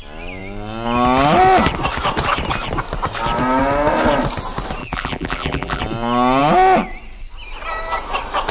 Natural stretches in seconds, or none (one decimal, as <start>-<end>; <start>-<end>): 0.0-4.8; 5.8-8.5